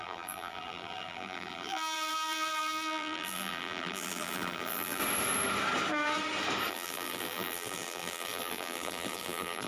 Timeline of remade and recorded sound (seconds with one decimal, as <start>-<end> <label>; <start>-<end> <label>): 0.0-5.0 remade; 5.0-6.7 recorded; 6.7-9.7 remade